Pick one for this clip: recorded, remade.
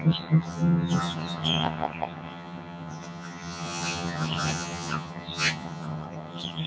remade